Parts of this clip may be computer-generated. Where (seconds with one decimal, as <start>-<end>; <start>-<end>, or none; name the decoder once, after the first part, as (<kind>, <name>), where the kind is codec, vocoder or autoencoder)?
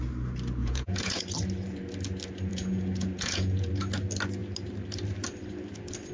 0.6-1.2 (vocoder, Vocos); 2.5-3.7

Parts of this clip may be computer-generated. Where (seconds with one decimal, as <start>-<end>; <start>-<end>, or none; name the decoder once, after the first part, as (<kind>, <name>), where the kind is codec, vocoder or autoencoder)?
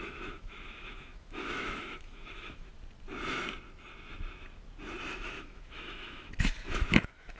0.0-2.7 (autoencoder, DAC-VAE); 5.1-7.4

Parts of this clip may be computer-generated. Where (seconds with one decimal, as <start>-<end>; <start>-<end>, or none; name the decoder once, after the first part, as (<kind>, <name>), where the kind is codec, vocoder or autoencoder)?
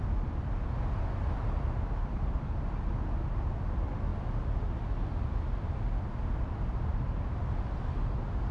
none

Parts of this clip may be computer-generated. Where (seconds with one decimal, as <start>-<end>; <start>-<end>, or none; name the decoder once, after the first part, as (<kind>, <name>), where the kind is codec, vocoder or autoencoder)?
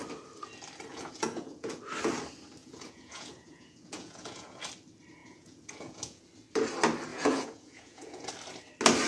0.9-1.8 (vocoder, Vocos); 2.6-4.6; 5.2-6.2; 7.1-8.3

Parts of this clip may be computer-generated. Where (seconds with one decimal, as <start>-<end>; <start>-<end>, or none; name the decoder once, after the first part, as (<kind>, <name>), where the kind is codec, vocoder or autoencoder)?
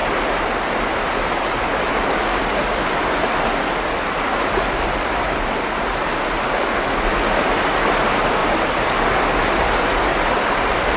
8.4-9.4 (vocoder, BigVGAN v2)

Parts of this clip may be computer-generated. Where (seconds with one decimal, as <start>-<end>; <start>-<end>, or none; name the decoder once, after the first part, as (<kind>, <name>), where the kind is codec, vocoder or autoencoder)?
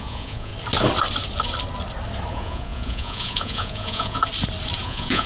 0.0-0.5 (vocoder, Vocos); 2.3-4.2; 4.8-5.3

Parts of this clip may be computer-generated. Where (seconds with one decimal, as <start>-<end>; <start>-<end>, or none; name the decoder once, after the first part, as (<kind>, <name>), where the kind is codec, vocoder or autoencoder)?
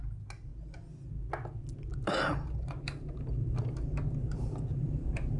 1.9-5.4 (vocoder, BigVGAN v2)